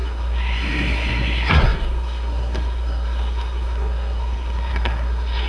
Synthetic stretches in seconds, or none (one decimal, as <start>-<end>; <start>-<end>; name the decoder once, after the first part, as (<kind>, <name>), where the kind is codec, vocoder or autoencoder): 0.0-5.5 (codec, SNAC)